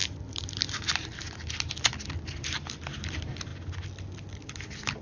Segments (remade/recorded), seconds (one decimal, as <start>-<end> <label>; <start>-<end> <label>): 0.0-5.0 recorded